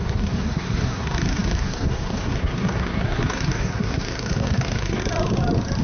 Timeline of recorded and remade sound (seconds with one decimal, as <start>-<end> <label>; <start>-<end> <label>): 0.0-5.0 remade; 5.0-5.8 recorded